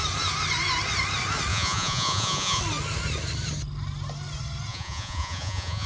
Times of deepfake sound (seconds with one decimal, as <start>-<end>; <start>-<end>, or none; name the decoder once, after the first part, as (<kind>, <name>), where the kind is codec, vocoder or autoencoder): 1.5-2.6 (vocoder, Vocos); 4.7-5.9